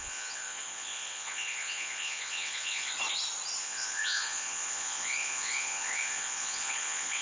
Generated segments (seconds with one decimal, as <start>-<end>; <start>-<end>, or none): 0.0-2.9; 3.6-7.2